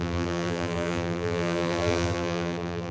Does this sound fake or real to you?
fake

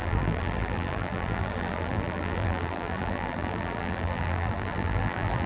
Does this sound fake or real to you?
fake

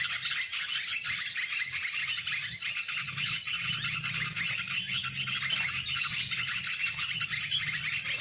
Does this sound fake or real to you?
real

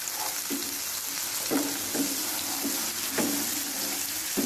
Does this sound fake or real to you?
real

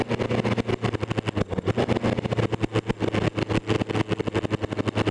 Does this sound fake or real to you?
real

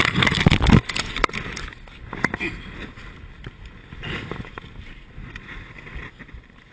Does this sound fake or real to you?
real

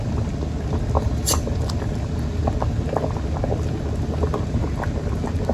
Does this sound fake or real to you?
real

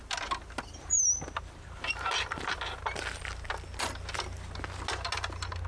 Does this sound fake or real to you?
real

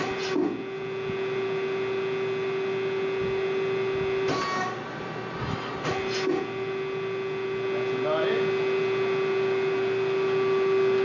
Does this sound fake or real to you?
real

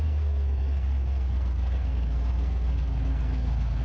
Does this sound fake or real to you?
fake